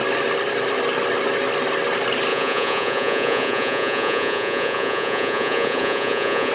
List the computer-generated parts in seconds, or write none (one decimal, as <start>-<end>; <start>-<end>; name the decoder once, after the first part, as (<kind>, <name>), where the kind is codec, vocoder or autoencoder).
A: 2.3-6.5 (vocoder, Vocos)